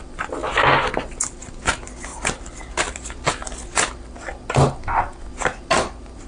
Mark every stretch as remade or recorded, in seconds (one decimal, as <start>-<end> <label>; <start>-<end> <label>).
0.0-6.3 recorded